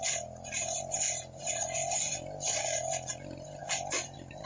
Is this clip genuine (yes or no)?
yes